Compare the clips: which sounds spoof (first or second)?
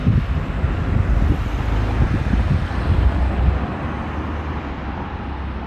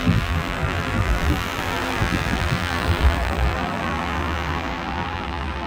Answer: second